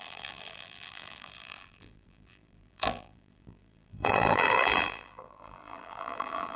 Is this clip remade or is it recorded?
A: remade